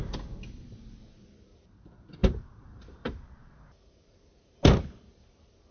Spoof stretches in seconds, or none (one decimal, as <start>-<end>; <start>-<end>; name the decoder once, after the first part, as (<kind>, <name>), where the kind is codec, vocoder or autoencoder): 2.2-5.7 (vocoder, BigVGAN v2)